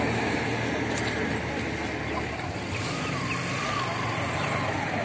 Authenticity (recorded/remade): recorded